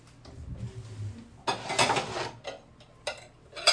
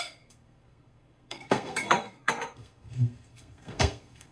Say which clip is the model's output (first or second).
second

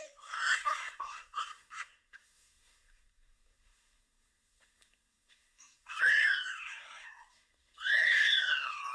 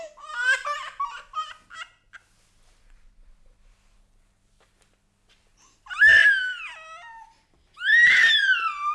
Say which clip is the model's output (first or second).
first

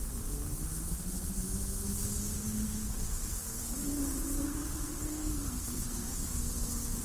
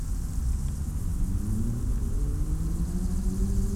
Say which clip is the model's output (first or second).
first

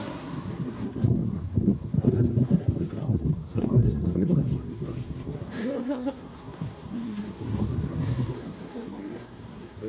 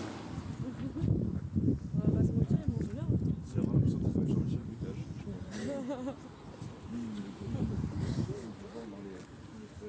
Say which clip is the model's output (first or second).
first